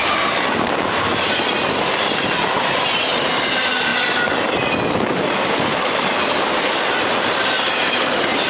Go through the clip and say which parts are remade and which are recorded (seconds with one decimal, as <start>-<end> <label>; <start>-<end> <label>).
0.0-8.5 recorded

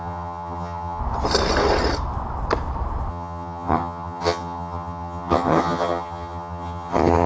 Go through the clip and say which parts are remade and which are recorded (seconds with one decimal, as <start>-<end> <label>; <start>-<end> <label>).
0.0-1.0 remade; 1.0-3.1 recorded; 3.1-7.3 remade

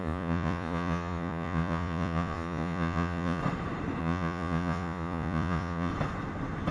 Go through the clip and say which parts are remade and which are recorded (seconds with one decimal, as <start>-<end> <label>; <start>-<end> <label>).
0.0-3.4 remade; 3.4-4.0 recorded; 4.0-5.9 remade; 5.9-6.7 recorded

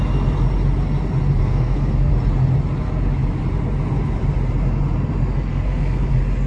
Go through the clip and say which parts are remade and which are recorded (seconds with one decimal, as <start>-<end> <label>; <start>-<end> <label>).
0.0-1.4 recorded; 1.4-2.1 remade; 2.1-5.5 recorded; 5.5-6.1 remade; 6.1-6.5 recorded